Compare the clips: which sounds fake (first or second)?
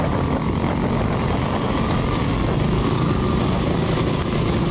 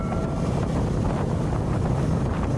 second